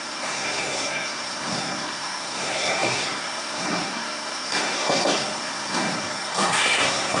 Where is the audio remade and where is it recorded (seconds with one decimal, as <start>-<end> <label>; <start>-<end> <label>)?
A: 0.0-7.2 remade